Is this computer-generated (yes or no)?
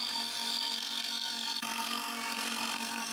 yes